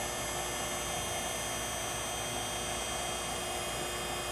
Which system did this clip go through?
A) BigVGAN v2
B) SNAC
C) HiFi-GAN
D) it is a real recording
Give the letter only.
D